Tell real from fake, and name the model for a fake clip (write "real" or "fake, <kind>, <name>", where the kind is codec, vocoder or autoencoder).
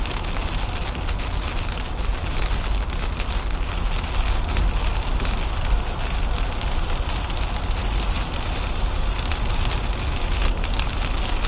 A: real